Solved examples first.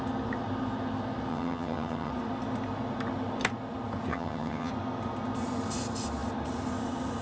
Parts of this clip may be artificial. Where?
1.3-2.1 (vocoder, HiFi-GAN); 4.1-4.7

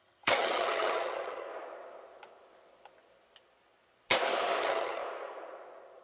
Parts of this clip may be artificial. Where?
0.0-1.5 (vocoder, HiFi-GAN); 4.6-5.0

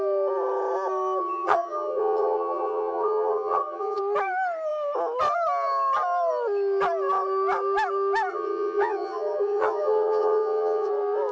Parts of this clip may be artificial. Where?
1.2-4.0 (vocoder, HiFi-GAN); 8.3-10.9

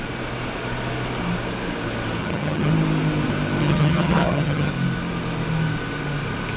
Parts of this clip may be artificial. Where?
2.2-2.7 (vocoder, HiFi-GAN); 3.6-4.7

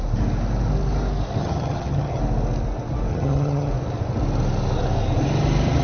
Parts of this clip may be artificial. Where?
1.4-2.2 (vocoder, HiFi-GAN); 3.1-3.7